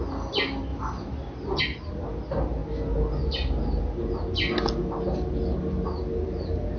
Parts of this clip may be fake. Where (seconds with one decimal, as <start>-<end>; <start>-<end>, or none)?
none